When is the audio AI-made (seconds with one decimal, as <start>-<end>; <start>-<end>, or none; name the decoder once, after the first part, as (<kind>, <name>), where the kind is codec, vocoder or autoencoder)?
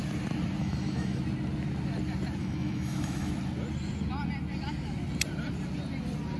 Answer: 0.6-1.2 (autoencoder, DAC-VAE); 2.4-3.3